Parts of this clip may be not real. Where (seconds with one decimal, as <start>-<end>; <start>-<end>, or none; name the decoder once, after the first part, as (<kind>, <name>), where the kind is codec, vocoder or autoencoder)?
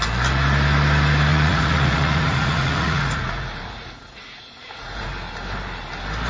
1.3-5.1 (vocoder, Vocos)